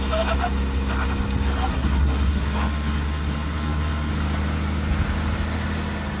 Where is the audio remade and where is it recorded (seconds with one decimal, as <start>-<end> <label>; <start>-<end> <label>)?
0.0-1.7 recorded; 1.7-4.1 remade; 4.1-6.2 recorded